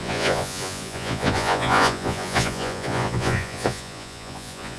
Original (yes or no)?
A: no